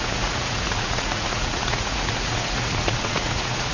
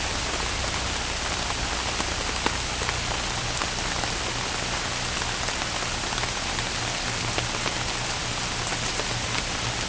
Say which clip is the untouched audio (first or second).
second